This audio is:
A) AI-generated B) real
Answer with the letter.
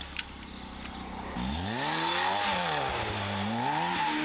B